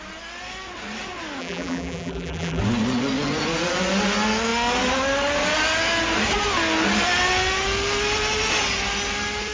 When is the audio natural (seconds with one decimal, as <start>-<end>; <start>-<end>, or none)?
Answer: 0.0-1.4; 2.6-9.5